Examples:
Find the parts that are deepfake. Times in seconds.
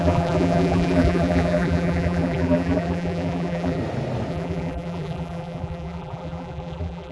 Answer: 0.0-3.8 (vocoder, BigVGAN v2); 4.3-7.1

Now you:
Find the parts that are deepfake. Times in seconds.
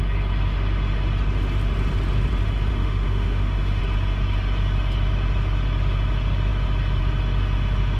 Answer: 2.7-3.8 (autoencoder, DAC-VAE)